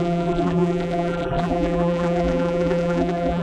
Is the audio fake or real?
fake